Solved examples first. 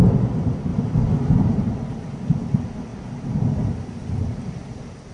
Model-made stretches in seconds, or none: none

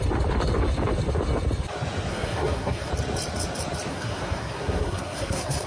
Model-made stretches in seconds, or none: 2.1-2.9 (codec, SNAC); 3.9-5.7

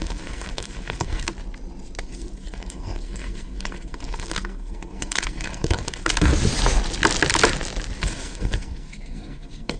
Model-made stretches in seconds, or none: 0.0-1.3 (codec, SNAC); 2.0-6.3; 8.0-9.8

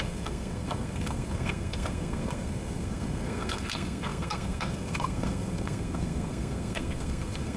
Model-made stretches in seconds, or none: 0.0-7.6 (codec, SNAC)